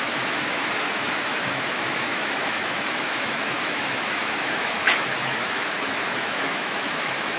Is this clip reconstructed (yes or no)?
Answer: yes